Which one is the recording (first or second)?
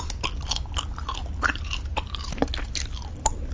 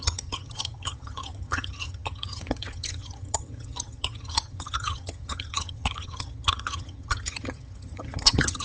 first